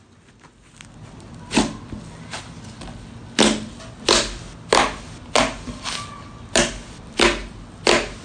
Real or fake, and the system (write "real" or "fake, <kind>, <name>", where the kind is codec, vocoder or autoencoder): real